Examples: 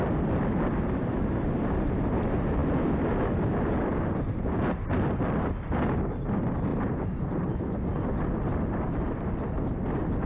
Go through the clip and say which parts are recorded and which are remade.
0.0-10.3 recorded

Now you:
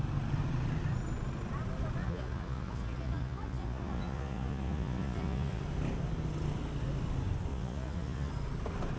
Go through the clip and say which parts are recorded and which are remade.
0.0-2.0 recorded; 2.0-5.6 remade; 5.6-7.5 recorded; 7.5-8.3 remade; 8.3-9.0 recorded

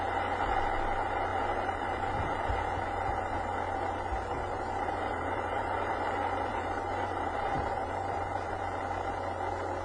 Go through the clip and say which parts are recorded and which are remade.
0.0-1.3 recorded; 1.3-2.5 remade; 2.5-4.3 recorded; 4.3-5.9 remade; 5.9-6.5 recorded; 6.5-8.6 remade; 8.6-9.8 recorded

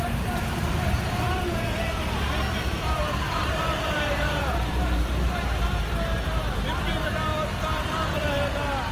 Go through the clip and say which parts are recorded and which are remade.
0.0-7.3 remade; 7.3-8.9 recorded

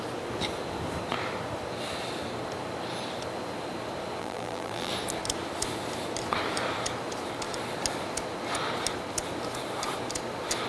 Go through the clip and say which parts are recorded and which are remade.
0.0-4.2 recorded; 4.2-4.9 remade; 4.9-10.7 recorded

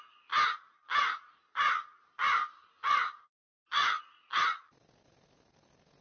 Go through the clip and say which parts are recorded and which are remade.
0.0-6.0 recorded